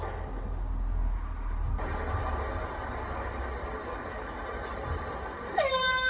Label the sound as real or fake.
real